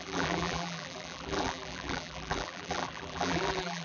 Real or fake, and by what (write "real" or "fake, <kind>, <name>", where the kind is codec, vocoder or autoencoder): fake, vocoder, BigVGAN v2